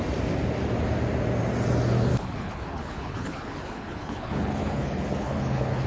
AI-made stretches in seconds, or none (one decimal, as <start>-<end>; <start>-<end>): 2.1-5.9